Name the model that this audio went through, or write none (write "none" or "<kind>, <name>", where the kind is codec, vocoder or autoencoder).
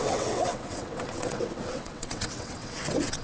vocoder, WaveNeXt